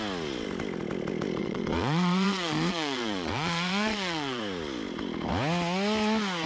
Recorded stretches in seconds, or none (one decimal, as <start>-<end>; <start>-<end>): 0.0-1.4; 4.4-6.5